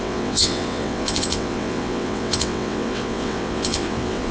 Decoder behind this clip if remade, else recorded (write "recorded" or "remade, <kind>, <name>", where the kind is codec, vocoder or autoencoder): remade, vocoder, WaveNeXt